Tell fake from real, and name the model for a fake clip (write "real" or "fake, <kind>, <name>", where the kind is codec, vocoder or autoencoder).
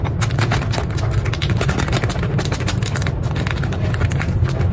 real